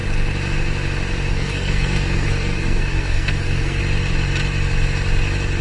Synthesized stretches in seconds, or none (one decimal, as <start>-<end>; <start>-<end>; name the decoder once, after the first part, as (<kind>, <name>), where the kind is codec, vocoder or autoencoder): 1.3-3.8 (codec, SNAC)